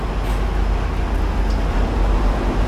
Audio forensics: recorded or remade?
recorded